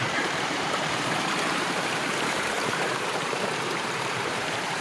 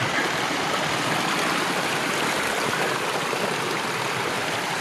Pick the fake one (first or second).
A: first